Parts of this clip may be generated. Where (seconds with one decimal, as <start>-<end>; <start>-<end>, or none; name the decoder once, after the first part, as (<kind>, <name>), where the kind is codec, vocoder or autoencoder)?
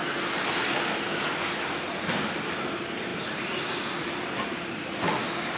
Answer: none